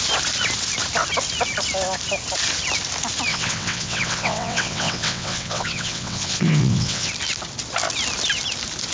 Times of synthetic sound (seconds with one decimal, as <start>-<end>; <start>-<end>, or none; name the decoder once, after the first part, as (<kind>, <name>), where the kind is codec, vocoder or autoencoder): 3.3-7.1 (vocoder, WaveNeXt)